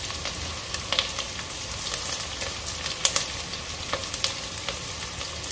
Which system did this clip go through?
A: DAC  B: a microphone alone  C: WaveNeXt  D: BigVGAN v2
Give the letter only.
B